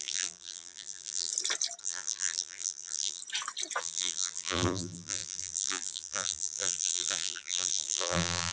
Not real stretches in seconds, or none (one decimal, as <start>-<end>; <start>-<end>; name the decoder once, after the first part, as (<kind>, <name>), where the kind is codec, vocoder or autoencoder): 0.0-1.3 (vocoder, BigVGAN v2); 1.8-3.2; 3.8-8.5